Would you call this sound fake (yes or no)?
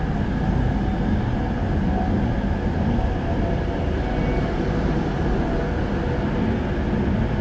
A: no